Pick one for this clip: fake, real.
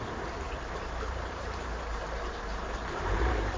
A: fake